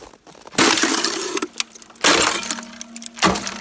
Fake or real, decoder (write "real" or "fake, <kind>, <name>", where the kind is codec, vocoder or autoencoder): real